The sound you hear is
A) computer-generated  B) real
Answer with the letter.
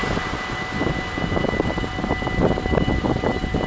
B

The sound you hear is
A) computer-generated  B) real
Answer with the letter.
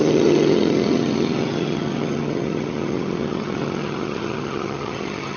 A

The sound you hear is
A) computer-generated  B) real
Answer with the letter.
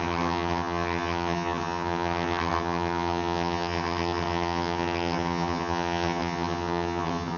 A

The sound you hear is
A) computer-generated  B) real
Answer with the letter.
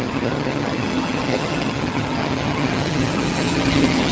A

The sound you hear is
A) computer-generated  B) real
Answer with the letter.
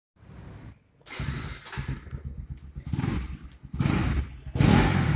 B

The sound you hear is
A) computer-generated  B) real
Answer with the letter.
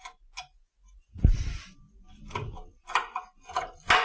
B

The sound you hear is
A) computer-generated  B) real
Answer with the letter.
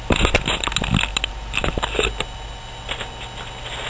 B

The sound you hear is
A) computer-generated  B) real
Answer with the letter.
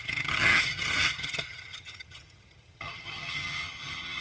A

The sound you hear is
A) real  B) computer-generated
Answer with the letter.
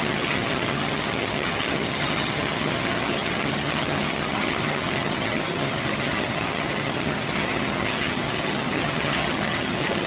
B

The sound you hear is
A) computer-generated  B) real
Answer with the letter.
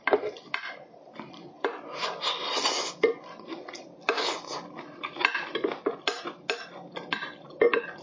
B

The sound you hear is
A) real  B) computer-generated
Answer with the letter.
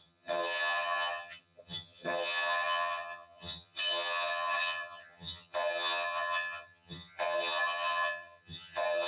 B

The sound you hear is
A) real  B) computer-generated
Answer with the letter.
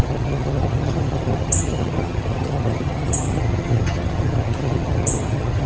B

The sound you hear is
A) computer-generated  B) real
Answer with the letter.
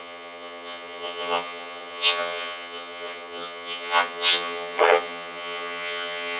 A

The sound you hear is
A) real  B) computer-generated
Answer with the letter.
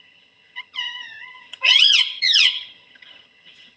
B